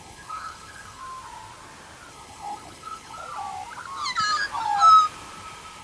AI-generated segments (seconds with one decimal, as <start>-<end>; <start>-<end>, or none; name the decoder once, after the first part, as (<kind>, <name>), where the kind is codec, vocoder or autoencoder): 0.0-1.0 (codec, HILCodec); 2.1-3.2